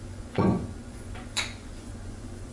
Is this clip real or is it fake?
fake